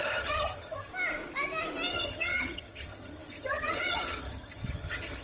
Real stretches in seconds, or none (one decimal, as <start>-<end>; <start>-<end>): 0.9-1.9